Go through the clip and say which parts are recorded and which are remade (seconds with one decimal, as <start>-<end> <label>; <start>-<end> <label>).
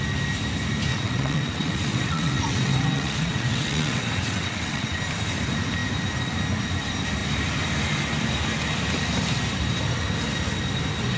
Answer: 0.0-0.9 recorded; 0.9-5.0 remade; 5.0-11.2 recorded